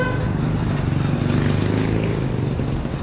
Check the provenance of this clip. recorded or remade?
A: recorded